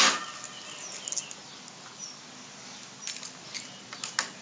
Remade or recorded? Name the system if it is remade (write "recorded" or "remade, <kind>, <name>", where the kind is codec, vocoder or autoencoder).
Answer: recorded